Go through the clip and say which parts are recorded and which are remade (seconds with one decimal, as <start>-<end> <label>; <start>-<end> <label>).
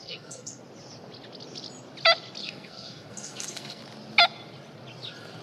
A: 0.0-0.6 remade; 0.6-2.4 recorded; 2.4-3.8 remade; 3.8-5.4 recorded